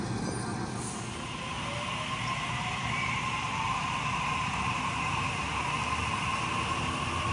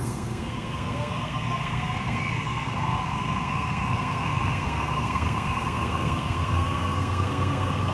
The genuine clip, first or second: first